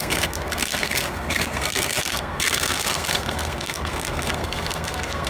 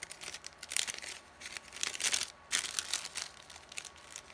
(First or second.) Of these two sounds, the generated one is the first